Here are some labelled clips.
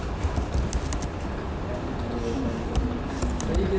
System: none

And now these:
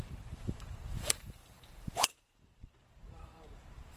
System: vocoder, BigVGAN v2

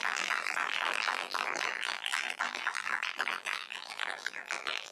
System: vocoder, BigVGAN v2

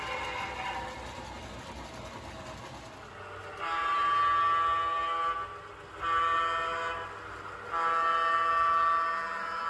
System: none